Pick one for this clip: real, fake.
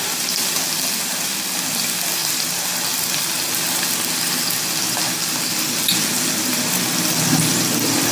real